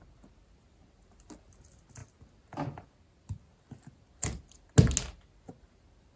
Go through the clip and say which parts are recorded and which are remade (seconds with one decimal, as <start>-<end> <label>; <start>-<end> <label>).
0.0-6.2 recorded